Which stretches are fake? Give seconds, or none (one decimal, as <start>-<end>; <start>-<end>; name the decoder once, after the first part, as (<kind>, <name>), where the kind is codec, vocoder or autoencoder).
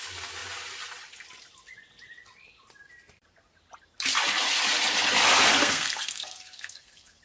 5.6-7.2 (codec, SNAC)